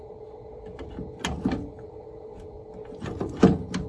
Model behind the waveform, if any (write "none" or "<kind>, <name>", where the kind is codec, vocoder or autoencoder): none